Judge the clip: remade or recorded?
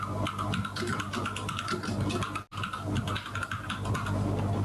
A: recorded